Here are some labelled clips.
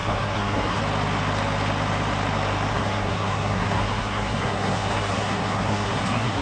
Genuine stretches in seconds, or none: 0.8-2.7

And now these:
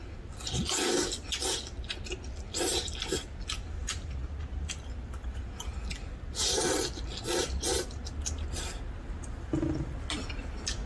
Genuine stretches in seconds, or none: 0.0-10.9